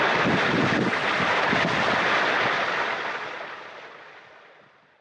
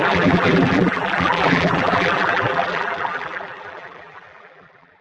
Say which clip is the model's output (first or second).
second